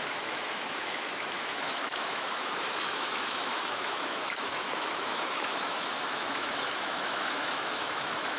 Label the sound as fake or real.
fake